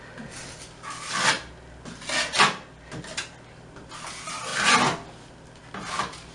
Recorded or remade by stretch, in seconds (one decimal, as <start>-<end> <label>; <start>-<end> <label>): 0.0-6.3 recorded